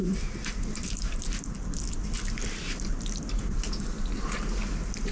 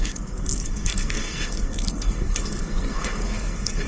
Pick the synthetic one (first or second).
second